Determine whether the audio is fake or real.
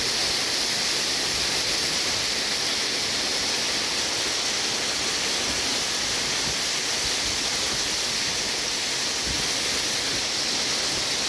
real